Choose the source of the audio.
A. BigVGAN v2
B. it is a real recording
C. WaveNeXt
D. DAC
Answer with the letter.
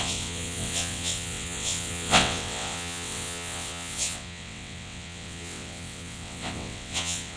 C